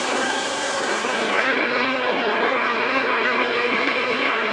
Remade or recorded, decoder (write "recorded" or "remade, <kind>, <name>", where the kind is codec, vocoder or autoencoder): remade, codec, SNAC